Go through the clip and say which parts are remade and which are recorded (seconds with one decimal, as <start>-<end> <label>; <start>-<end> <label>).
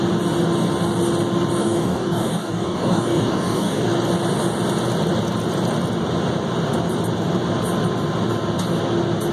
0.0-1.6 recorded; 1.6-3.9 remade; 3.9-9.3 recorded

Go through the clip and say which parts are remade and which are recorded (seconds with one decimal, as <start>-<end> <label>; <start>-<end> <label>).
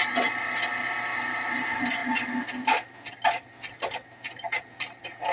0.0-5.3 recorded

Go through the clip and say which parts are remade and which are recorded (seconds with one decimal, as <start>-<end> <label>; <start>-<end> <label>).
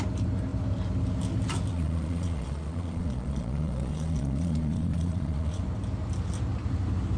0.0-1.7 recorded; 1.7-5.6 remade; 5.6-7.2 recorded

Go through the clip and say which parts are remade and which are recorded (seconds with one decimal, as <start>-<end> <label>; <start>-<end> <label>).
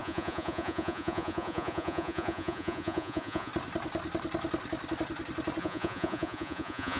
0.0-3.5 remade; 3.5-5.6 recorded; 5.6-7.0 remade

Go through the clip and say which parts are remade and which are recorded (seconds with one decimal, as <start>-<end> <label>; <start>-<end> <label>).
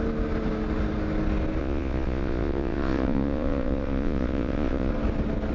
0.0-1.6 recorded; 1.6-4.9 remade; 4.9-5.5 recorded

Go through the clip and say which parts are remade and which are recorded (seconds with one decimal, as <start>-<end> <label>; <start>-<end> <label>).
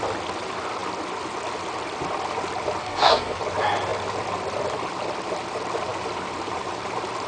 0.0-2.8 recorded; 2.8-3.4 remade; 3.4-7.3 recorded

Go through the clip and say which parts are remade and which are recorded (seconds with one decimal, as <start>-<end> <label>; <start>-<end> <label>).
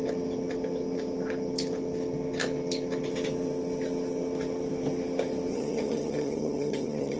0.0-5.5 recorded; 5.5-7.2 remade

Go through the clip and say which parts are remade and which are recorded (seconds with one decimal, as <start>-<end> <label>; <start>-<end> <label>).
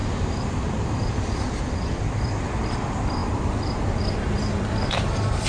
0.0-5.5 remade